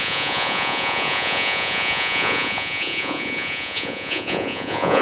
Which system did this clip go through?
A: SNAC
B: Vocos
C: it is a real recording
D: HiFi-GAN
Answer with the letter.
B